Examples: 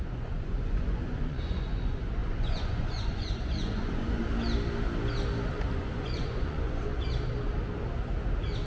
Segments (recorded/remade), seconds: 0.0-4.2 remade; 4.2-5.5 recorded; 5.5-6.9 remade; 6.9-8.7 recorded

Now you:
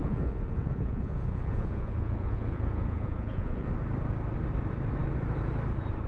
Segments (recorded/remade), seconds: 0.0-3.7 remade; 3.7-6.1 recorded

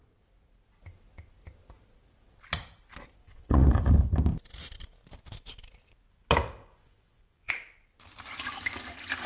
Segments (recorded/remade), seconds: 0.0-3.2 recorded; 3.2-3.9 remade; 3.9-6.6 recorded; 6.6-7.5 remade; 7.5-9.3 recorded